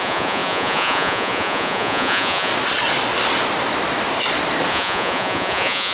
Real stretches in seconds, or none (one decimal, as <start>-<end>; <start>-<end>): 2.5-4.7